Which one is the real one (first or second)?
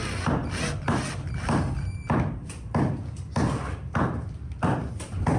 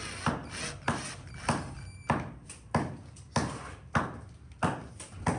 second